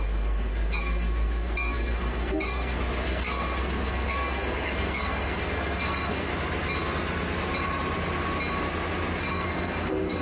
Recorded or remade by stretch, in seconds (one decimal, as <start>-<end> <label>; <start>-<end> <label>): 0.0-6.3 remade; 6.3-9.2 recorded; 9.2-10.2 remade